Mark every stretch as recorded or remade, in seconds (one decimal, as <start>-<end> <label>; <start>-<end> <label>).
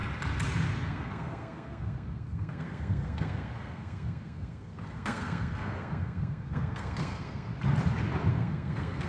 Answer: 0.0-0.8 recorded; 0.8-7.5 remade; 7.5-8.3 recorded; 8.3-9.1 remade